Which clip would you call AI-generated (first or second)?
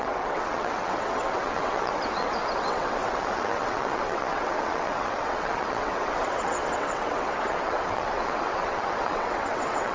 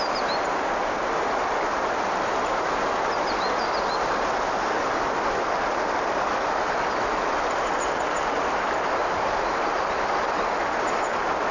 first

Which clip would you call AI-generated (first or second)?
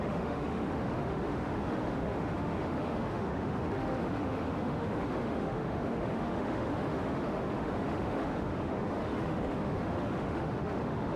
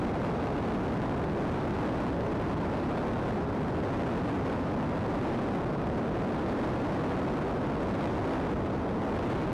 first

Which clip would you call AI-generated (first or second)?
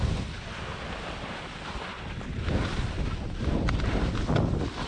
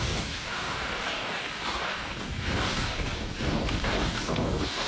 second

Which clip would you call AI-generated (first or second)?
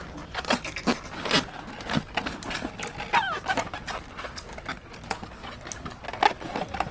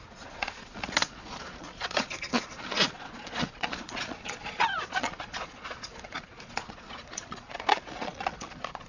second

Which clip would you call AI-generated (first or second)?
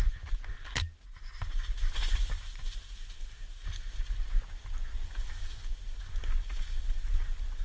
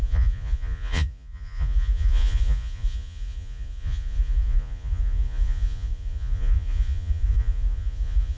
second